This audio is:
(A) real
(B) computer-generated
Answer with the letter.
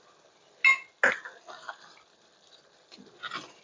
A